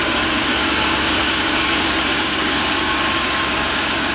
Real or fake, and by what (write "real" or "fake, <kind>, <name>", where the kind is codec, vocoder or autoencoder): fake, codec, DAC